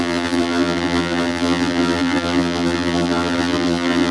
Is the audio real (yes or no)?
no